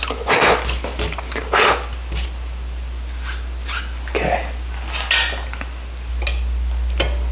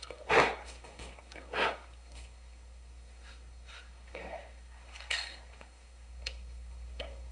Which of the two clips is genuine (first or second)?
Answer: first